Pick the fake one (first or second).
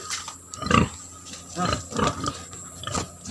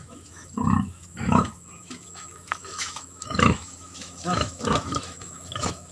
second